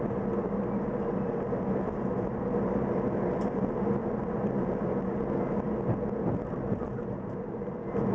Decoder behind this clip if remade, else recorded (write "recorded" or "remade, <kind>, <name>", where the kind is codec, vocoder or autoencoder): recorded